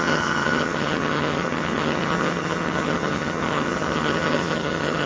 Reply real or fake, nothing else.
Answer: fake